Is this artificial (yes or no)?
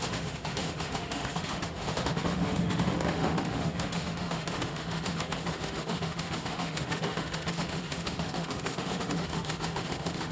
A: yes